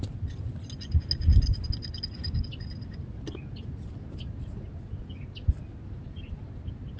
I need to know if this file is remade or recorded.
recorded